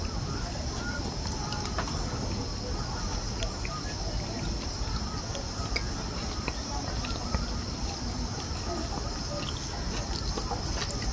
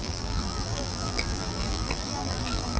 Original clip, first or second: first